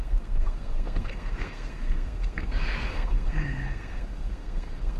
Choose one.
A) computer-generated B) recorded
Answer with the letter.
A